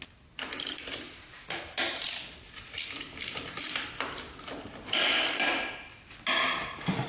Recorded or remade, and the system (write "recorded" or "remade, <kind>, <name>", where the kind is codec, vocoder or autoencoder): recorded